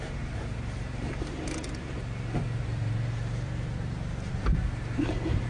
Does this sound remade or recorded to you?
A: remade